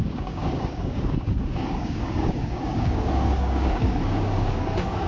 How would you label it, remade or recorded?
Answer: remade